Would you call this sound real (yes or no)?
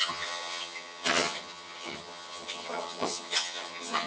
no